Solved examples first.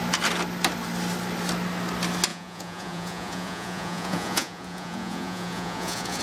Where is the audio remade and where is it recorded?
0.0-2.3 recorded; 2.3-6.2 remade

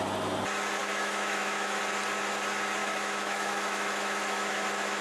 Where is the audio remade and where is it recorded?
0.0-0.8 recorded; 0.8-1.8 remade; 1.8-2.8 recorded; 2.8-5.0 remade

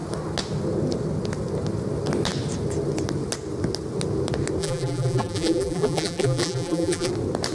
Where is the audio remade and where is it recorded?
0.0-4.6 recorded; 4.6-7.1 remade; 7.1-7.5 recorded

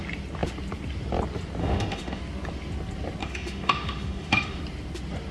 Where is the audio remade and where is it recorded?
0.0-1.6 recorded; 1.6-2.2 remade; 2.2-3.2 recorded; 3.2-4.6 remade; 4.6-5.3 recorded

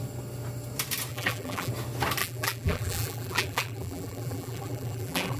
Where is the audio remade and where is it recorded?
0.0-1.1 recorded; 1.1-1.7 remade; 1.7-2.2 recorded; 2.2-5.4 remade